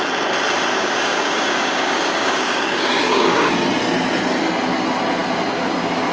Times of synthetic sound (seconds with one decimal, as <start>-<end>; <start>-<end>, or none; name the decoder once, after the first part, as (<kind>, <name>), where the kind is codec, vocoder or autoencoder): 0.7-3.5 (codec, DAC)